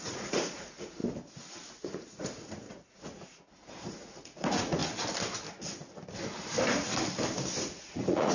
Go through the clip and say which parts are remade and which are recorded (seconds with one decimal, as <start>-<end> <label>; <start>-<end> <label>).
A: 0.0-1.0 remade; 1.0-1.7 recorded; 1.7-4.8 remade; 4.8-7.6 recorded; 7.6-8.3 remade